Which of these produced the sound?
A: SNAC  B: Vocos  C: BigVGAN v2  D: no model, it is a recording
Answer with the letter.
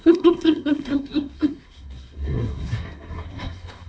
A